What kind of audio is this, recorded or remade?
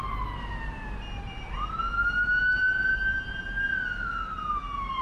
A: recorded